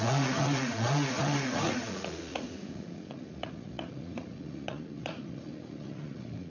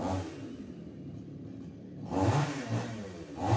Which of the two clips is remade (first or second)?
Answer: first